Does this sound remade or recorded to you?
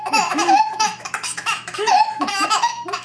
remade